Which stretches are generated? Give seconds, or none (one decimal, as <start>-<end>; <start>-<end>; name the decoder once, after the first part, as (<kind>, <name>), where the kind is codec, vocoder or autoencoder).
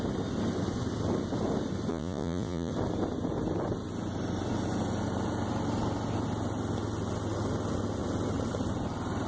1.9-2.7 (vocoder, Vocos)